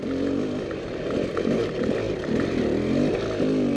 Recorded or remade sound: recorded